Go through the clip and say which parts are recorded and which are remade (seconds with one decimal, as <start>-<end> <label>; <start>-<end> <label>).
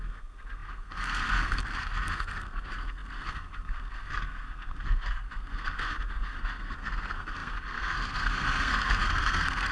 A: 0.0-9.7 remade